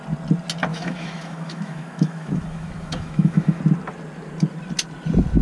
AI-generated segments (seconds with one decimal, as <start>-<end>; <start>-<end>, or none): 0.7-3.6

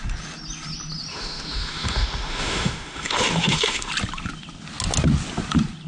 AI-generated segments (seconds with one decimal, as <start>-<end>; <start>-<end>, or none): 1.1-3.9

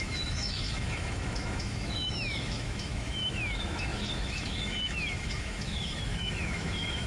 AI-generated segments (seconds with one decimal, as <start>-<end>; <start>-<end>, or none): 0.0-7.1

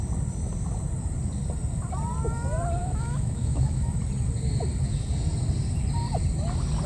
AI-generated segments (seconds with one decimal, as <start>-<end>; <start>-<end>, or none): 2.8-4.0